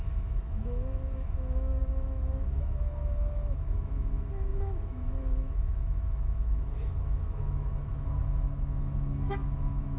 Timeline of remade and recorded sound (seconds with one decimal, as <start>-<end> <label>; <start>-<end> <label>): 0.0-10.0 remade